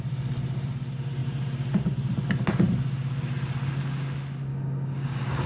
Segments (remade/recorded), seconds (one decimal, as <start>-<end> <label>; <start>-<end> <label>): 0.0-4.5 recorded; 4.5-5.5 remade

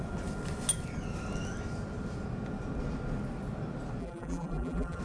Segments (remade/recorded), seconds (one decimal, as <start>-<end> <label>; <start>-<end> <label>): 0.0-4.0 recorded; 4.0-5.0 remade

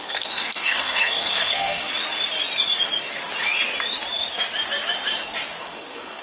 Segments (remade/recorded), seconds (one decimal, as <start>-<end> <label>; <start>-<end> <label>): 0.0-1.9 remade; 1.9-5.6 recorded; 5.6-6.2 remade

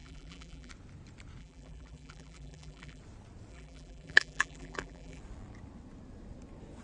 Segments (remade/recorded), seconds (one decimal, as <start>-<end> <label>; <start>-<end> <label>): 0.0-0.7 remade; 0.7-1.4 recorded; 1.4-3.0 remade; 3.0-3.5 recorded; 3.5-5.2 remade; 5.2-6.8 recorded

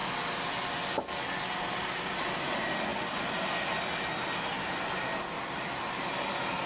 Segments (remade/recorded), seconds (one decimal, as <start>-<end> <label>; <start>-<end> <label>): 0.0-6.7 recorded

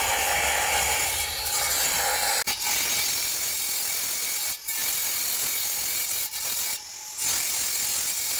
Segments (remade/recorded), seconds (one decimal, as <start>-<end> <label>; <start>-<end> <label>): 0.0-8.4 recorded